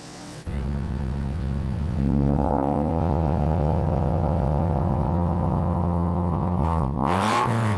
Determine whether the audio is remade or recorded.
remade